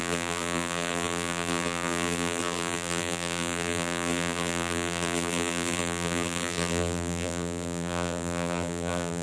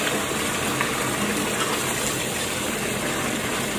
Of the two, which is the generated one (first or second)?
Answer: first